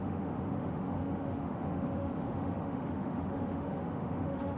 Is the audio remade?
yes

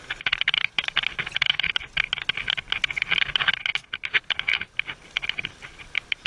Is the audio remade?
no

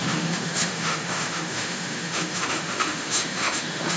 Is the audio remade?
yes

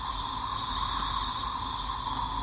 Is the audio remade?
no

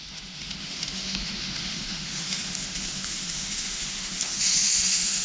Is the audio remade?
yes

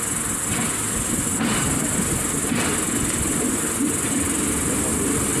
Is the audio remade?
no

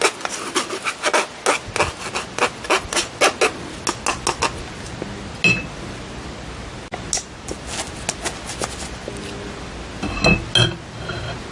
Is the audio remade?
no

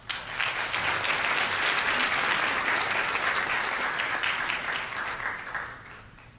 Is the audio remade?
no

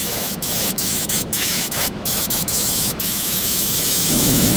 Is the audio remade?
yes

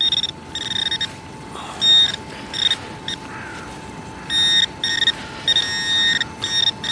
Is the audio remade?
no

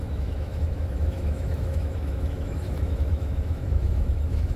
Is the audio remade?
yes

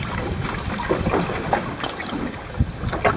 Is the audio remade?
no